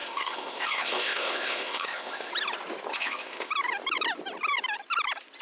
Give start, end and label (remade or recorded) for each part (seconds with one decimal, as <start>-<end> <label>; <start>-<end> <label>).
0.0-2.3 remade; 2.3-2.9 recorded; 2.9-3.5 remade; 3.5-5.4 recorded